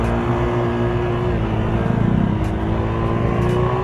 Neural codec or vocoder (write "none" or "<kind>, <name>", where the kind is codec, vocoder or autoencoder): none